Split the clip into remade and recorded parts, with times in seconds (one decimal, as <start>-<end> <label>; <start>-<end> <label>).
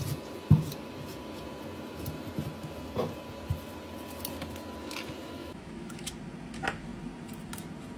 0.0-5.4 recorded; 5.4-6.1 remade; 6.1-8.0 recorded